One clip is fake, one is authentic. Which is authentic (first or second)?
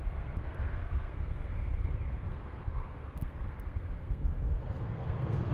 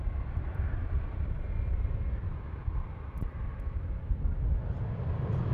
second